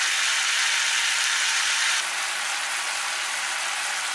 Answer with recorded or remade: recorded